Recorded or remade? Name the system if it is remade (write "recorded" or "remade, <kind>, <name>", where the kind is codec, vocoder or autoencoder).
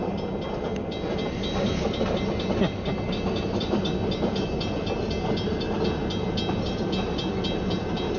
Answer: recorded